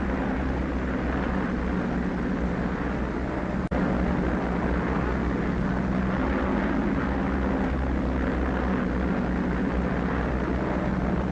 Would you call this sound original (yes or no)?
yes